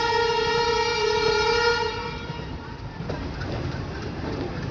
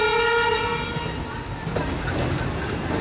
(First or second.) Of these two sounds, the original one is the second